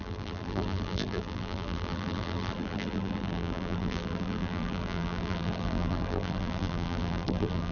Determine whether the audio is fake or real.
fake